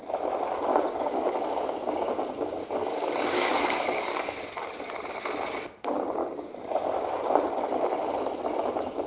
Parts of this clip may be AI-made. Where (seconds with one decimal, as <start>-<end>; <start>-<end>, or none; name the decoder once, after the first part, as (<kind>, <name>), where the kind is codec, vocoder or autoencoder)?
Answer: 0.7-4.4 (codec, DAC); 6.2-7.5